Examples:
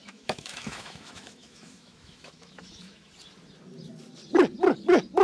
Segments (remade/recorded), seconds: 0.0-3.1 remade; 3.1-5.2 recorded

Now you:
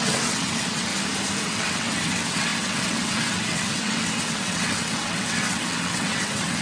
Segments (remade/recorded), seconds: 0.0-0.9 remade; 0.9-1.4 recorded; 1.4-6.6 remade

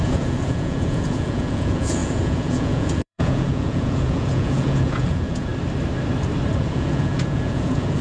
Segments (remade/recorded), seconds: 0.0-5.5 remade; 5.5-6.6 recorded; 6.6-8.0 remade

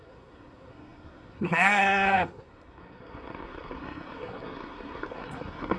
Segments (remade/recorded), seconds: 0.0-5.8 remade

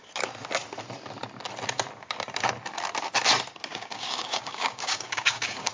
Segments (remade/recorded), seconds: 0.0-3.7 recorded; 3.7-5.7 remade

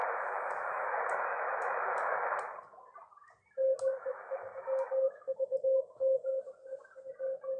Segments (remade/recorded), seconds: 0.0-2.3 remade; 2.3-4.1 recorded; 4.1-6.4 remade; 6.4-7.6 recorded

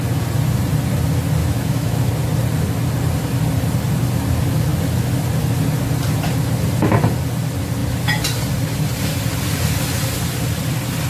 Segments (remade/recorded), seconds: 0.0-1.4 recorded; 1.4-2.1 remade; 2.1-11.1 recorded